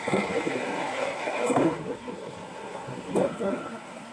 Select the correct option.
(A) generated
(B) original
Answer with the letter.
A